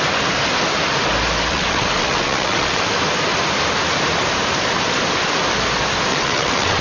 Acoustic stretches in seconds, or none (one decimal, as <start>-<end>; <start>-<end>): 0.0-1.5; 2.9-6.1